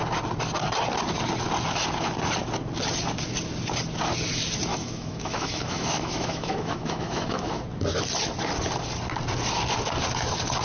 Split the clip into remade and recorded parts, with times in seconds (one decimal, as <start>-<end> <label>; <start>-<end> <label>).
0.0-4.7 recorded; 4.7-7.6 remade; 7.6-10.6 recorded